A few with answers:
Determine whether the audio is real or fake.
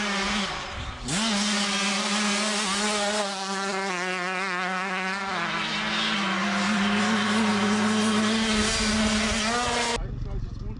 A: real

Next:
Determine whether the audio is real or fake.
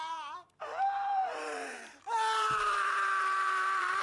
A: fake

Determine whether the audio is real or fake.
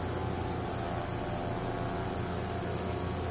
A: real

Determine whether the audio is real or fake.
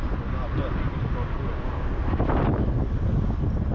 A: real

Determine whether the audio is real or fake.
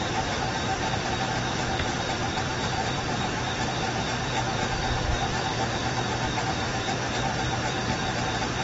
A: fake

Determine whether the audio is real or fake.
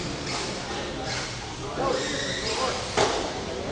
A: real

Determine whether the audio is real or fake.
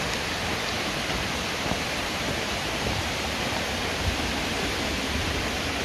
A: fake